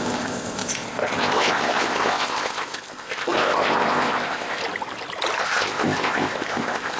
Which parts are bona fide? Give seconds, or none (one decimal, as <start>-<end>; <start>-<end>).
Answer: 4.6-5.4